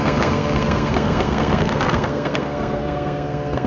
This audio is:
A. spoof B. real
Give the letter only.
A